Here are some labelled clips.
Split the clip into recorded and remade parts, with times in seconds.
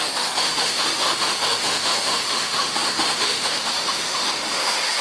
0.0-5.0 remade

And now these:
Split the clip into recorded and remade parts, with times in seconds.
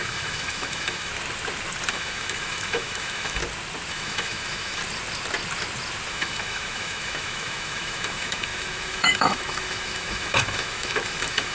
0.0-1.1 remade; 1.1-1.9 recorded; 1.9-3.4 remade; 3.4-3.9 recorded; 3.9-4.8 remade; 4.8-6.1 recorded; 6.1-11.5 remade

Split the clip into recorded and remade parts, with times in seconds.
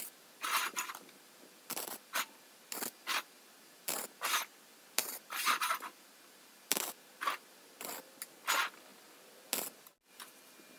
0.0-10.8 recorded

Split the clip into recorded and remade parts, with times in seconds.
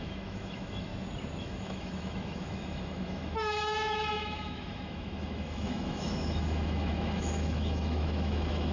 0.0-0.9 remade; 0.9-1.4 recorded; 1.4-8.7 remade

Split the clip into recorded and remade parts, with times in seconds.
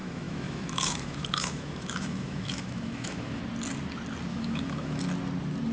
0.0-3.4 remade; 3.4-4.3 recorded; 4.3-5.0 remade; 5.0-5.7 recorded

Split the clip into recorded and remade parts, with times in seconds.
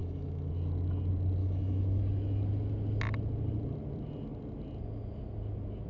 0.0-0.5 remade; 0.5-1.4 recorded; 1.4-2.0 remade; 2.0-5.9 recorded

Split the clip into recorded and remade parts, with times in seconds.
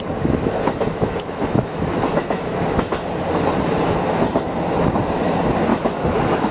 0.0-0.4 recorded; 0.4-3.1 remade; 3.1-5.7 recorded; 5.7-6.5 remade